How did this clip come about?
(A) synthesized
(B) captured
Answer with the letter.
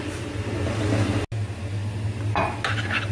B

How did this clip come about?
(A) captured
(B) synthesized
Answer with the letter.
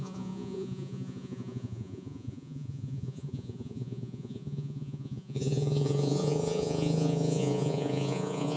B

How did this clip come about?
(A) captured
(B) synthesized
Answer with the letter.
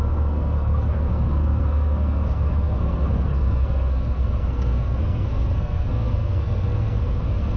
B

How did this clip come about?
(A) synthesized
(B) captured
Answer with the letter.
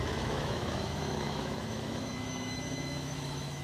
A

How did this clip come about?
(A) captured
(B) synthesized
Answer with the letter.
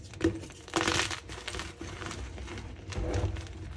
A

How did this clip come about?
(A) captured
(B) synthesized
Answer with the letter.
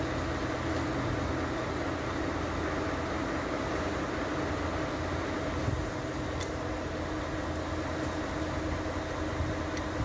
A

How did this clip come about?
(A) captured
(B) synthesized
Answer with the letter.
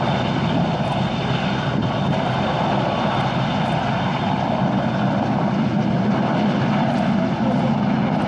A